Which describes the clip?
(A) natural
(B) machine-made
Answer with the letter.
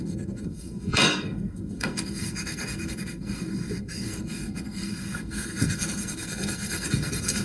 B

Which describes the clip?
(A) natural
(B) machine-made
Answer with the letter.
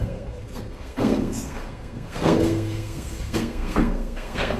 B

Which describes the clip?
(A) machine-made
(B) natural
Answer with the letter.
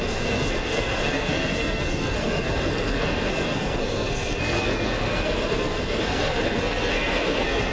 A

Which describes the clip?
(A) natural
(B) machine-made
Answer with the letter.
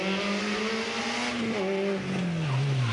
A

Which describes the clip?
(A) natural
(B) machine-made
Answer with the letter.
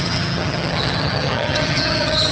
B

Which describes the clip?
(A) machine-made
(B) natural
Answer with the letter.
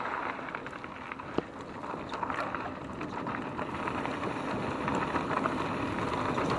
B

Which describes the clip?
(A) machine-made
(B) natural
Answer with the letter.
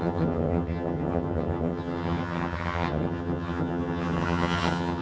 A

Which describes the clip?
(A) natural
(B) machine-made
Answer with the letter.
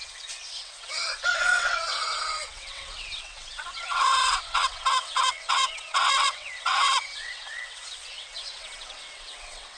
B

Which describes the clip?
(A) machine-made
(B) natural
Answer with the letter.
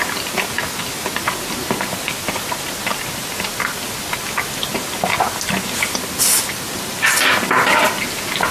B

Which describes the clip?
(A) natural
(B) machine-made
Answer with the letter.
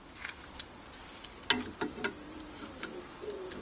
A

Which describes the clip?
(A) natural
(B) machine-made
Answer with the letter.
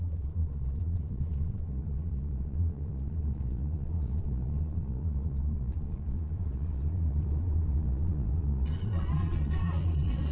B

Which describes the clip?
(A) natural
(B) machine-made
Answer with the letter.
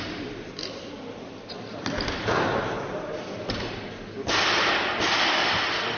A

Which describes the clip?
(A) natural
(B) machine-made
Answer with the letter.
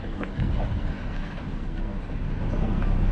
B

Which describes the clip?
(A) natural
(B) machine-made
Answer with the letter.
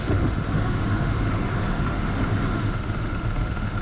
B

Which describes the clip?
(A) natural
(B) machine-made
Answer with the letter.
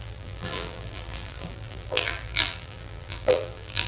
B